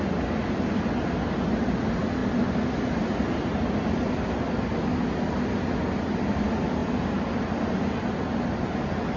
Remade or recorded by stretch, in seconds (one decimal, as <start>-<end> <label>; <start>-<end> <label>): 0.0-9.2 recorded